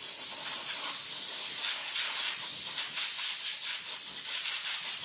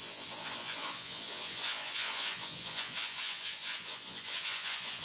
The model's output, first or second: second